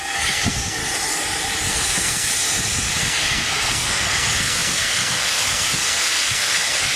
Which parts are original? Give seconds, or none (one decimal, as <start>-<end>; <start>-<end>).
0.8-1.7; 2.3-3.0